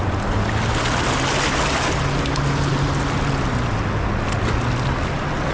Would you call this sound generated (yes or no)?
no